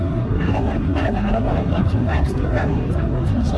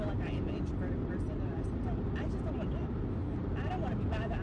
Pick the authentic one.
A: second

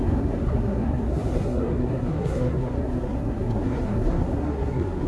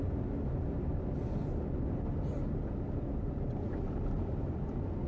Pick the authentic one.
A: second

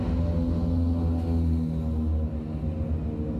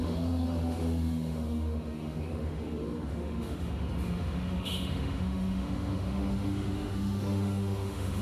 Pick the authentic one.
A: first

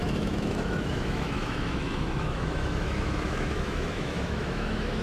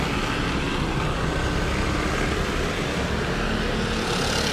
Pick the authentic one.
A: second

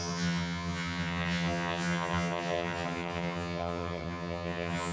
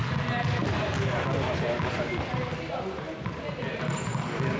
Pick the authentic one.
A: second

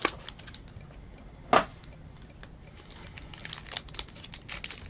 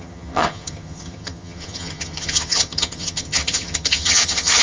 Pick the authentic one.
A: first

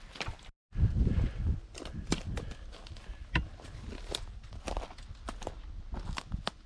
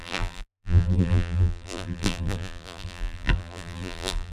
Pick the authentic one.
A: first